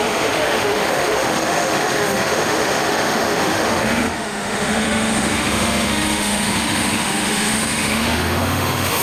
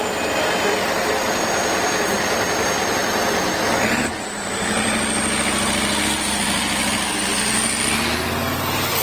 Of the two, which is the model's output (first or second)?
first